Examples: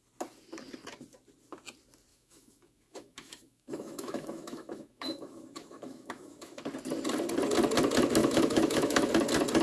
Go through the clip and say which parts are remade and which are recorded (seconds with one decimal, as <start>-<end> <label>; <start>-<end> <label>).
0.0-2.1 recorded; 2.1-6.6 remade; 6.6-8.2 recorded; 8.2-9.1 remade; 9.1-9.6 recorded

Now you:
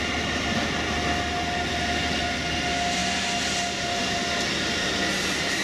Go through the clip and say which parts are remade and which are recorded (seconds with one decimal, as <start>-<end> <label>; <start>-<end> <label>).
0.0-5.6 recorded

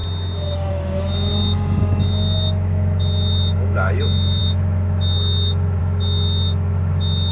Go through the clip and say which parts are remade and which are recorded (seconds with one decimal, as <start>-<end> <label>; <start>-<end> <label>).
0.0-0.7 recorded; 0.7-1.3 remade; 1.3-1.8 recorded; 1.8-7.3 remade

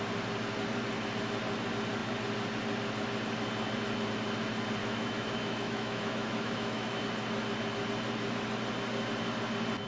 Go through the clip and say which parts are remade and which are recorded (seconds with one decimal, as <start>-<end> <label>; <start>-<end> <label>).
0.0-4.8 recorded; 4.8-7.0 remade; 7.0-9.9 recorded

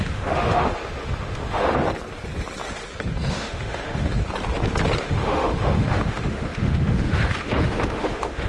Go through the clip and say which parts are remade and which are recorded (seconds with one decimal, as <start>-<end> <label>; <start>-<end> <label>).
0.0-1.8 remade; 1.8-3.3 recorded; 3.3-4.1 remade; 4.1-5.0 recorded; 5.0-8.5 remade

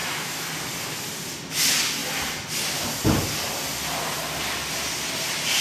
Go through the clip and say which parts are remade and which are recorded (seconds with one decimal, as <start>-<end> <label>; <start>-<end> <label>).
0.0-0.5 remade; 0.5-5.6 recorded

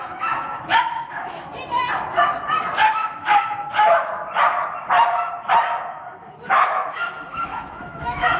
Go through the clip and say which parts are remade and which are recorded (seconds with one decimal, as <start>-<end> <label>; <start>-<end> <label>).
0.0-1.5 remade; 1.5-2.9 recorded; 2.9-4.2 remade; 4.2-5.9 recorded; 5.9-8.4 remade